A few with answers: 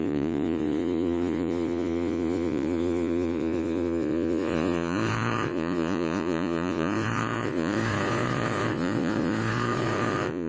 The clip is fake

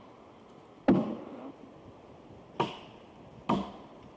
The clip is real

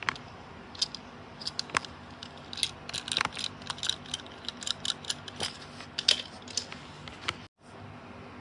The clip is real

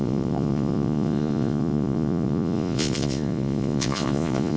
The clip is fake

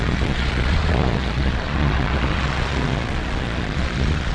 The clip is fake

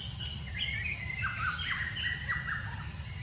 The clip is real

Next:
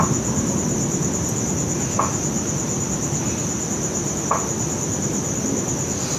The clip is real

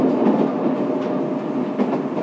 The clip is real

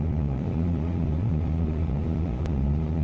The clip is fake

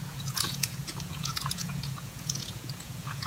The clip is fake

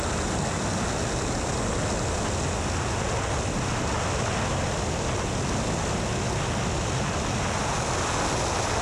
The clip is real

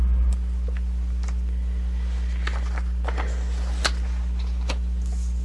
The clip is real